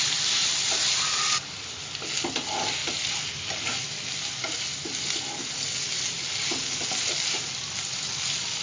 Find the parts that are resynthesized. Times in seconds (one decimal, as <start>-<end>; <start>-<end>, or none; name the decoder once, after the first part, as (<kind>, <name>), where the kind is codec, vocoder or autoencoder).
none